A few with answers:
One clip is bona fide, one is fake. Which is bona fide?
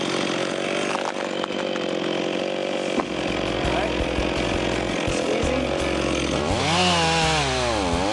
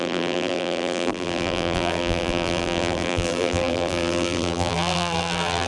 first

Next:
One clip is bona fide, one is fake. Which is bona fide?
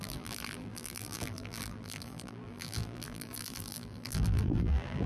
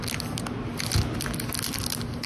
second